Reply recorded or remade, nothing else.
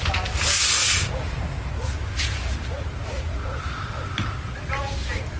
recorded